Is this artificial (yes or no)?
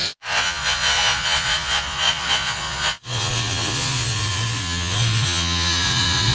yes